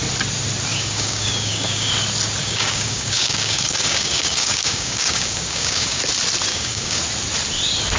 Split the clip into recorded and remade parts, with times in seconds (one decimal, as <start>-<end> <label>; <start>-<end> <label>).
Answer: 0.0-0.7 recorded; 0.7-1.9 remade; 1.9-2.4 recorded; 2.4-6.0 remade; 6.0-6.5 recorded; 6.5-7.0 remade; 7.0-8.0 recorded